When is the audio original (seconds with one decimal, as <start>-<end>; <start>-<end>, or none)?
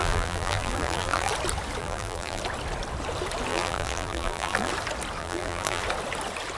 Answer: 1.3-1.8; 2.4-3.5; 4.7-5.2; 5.8-6.6